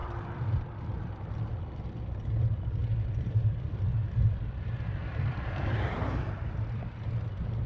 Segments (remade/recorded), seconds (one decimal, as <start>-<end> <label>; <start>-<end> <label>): 0.0-0.6 remade; 0.6-2.8 recorded; 2.8-6.5 remade; 6.5-7.7 recorded